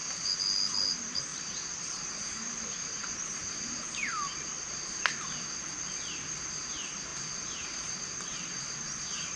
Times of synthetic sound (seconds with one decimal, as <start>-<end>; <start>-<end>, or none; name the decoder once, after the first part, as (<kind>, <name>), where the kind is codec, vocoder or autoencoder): 1.3-4.1 (vocoder, BigVGAN v2); 7.1-9.4